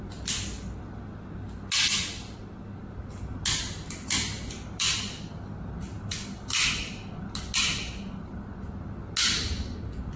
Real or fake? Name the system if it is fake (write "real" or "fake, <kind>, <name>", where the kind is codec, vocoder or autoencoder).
real